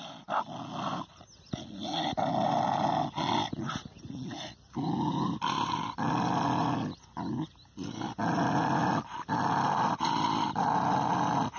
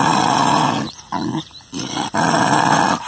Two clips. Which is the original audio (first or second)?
first